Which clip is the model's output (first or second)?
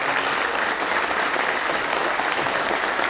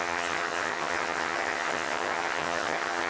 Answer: second